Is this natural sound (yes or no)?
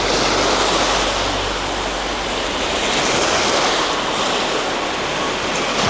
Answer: yes